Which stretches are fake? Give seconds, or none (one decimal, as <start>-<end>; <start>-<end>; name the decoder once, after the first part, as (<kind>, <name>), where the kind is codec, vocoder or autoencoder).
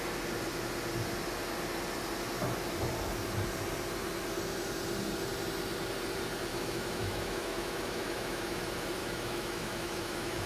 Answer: 6.5-8.6 (autoencoder, DAC-VAE); 9.0-10.5